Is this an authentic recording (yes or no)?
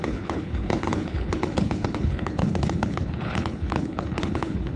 no